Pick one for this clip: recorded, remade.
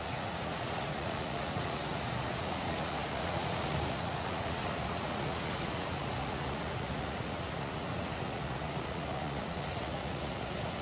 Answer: remade